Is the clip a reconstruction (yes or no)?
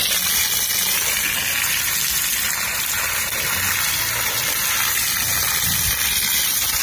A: no